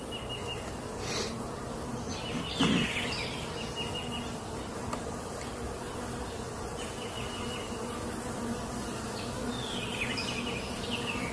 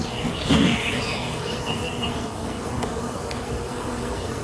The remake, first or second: second